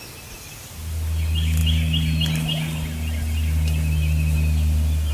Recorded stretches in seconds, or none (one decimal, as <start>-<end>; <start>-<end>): 0.0-5.1